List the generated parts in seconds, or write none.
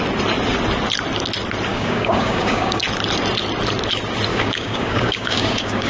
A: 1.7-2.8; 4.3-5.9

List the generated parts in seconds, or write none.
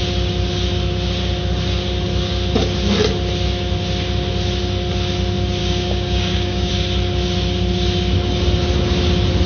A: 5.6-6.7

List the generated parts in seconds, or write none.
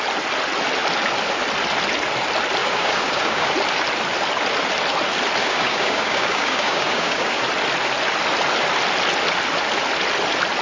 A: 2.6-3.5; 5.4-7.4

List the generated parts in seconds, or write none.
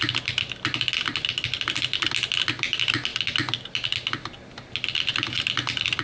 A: none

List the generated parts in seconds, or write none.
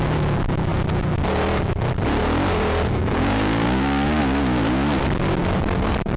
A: 3.0-4.2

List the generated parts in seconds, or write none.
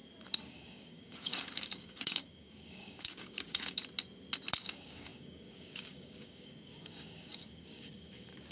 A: 0.5-3.8; 4.6-8.5